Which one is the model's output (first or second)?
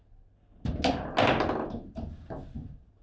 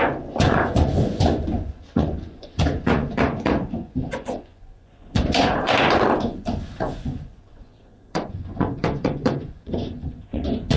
second